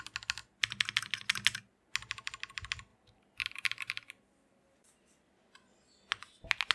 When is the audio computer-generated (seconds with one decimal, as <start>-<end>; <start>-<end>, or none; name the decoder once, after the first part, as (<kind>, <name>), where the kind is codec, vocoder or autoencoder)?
2.9-4.2 (vocoder, BigVGAN v2)